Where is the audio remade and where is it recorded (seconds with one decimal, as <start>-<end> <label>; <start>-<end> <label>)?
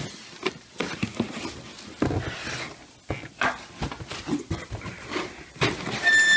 0.0-6.4 recorded